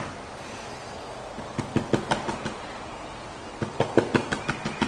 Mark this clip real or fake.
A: real